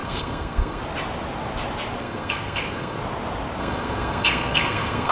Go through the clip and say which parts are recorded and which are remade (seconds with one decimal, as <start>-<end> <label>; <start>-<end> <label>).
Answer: 0.0-0.8 remade; 0.8-2.0 recorded; 2.0-3.0 remade; 3.0-3.6 recorded; 3.6-5.1 remade